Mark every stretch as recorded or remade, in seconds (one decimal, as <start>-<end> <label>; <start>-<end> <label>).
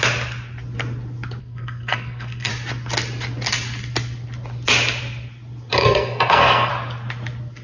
0.0-1.4 recorded; 1.4-2.5 remade; 2.5-5.7 recorded; 5.7-6.7 remade; 6.7-7.6 recorded